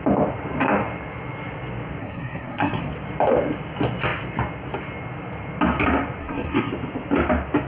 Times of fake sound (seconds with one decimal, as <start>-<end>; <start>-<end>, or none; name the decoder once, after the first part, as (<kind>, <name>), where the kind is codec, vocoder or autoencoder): 2.0-2.8 (codec, SNAC); 6.2-6.7